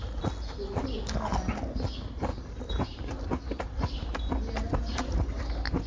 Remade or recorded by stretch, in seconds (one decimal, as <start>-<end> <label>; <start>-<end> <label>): 0.0-2.3 recorded; 2.3-4.3 remade; 4.3-4.7 recorded; 4.7-5.4 remade; 5.4-5.9 recorded